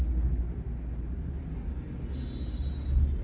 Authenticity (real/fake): real